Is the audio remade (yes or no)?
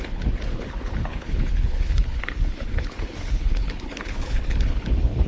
yes